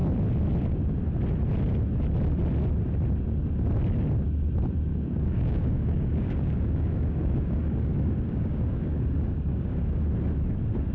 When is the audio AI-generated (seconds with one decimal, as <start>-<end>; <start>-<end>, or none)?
4.9-10.0